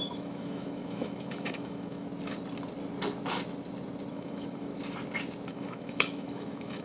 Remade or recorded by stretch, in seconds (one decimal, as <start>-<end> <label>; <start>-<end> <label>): 0.0-2.1 remade; 2.1-4.1 recorded; 4.1-4.7 remade; 4.7-5.5 recorded; 5.5-6.8 remade

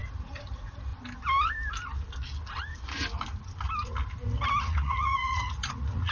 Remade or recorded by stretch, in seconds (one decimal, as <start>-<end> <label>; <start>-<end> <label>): 0.0-0.9 remade; 0.9-4.6 recorded; 4.6-6.1 remade

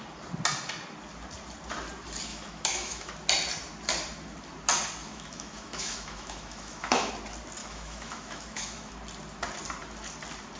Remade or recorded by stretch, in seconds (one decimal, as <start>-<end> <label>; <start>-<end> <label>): 0.0-2.3 recorded; 2.3-3.1 remade; 3.1-5.0 recorded; 5.0-7.1 remade; 7.1-7.6 recorded; 7.6-8.9 remade; 8.9-10.6 recorded

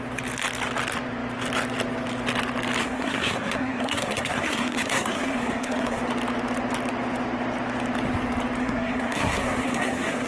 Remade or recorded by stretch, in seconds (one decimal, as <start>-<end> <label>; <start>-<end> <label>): 0.0-2.8 recorded; 2.8-6.0 remade; 6.0-8.6 recorded; 8.6-10.3 remade

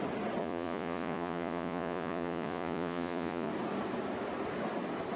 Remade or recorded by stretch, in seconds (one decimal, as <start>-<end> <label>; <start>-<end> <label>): 0.0-0.4 recorded; 0.4-3.5 remade; 3.5-5.2 recorded

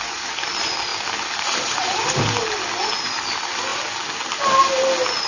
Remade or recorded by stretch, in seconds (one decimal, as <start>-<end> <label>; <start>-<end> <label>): 0.0-5.3 recorded